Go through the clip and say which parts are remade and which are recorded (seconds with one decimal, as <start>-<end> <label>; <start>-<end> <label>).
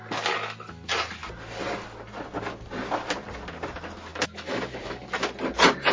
0.0-4.1 recorded; 4.1-5.1 remade; 5.1-5.9 recorded